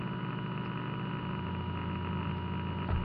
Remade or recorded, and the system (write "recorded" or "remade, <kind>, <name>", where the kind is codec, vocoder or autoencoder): recorded